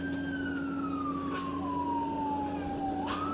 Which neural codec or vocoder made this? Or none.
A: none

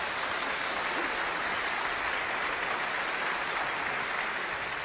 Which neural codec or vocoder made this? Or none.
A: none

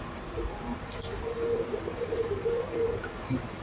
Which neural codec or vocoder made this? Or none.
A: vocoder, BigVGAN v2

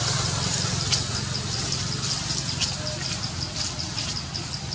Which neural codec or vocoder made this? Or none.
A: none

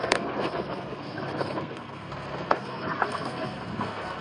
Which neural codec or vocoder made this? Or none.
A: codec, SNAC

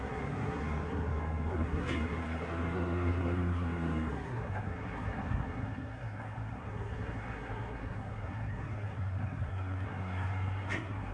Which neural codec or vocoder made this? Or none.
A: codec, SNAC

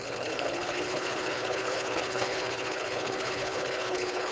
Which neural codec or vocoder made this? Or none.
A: codec, HILCodec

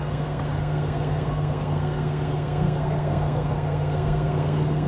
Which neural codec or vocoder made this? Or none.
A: codec, SNAC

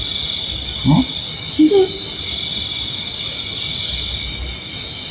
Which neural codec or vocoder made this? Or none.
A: none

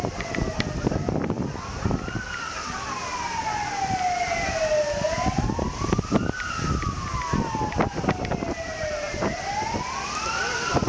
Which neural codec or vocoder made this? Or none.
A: none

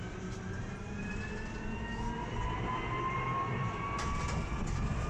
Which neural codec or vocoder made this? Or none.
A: none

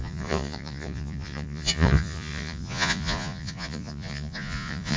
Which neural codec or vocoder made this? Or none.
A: vocoder, Vocos